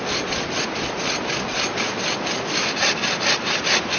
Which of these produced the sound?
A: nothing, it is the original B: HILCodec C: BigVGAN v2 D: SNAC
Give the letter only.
A